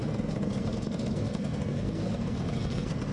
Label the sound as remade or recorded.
remade